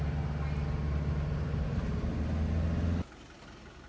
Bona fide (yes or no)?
yes